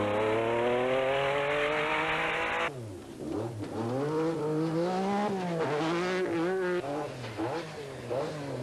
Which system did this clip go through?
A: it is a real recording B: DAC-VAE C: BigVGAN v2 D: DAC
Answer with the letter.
A